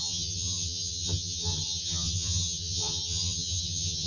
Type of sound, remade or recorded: remade